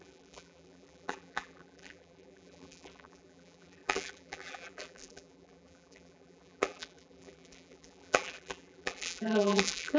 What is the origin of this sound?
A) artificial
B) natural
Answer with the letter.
A